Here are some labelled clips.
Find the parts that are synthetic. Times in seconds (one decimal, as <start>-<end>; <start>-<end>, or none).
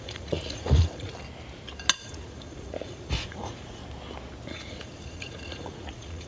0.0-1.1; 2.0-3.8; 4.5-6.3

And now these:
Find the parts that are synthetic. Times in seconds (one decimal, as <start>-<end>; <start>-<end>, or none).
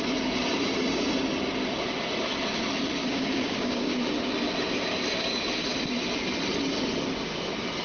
3.0-4.0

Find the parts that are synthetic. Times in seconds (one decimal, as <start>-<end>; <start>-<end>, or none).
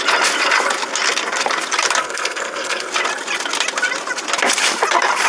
2.0-2.9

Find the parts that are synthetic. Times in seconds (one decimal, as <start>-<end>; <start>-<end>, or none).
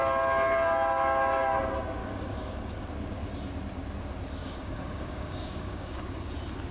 2.0-2.8; 4.4-6.0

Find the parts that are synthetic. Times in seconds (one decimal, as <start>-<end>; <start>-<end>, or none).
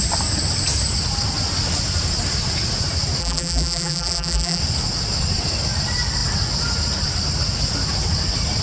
3.2-4.6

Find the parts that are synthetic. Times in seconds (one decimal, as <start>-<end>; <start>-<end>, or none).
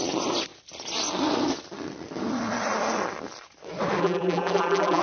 4.0-5.0